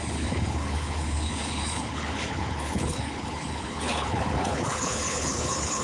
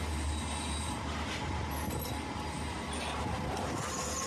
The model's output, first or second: first